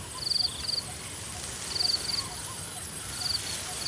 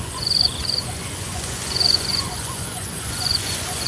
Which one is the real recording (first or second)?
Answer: first